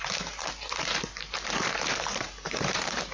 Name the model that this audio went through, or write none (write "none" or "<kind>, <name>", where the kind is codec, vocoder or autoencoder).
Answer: vocoder, BigVGAN v2